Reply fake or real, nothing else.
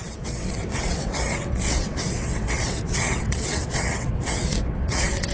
fake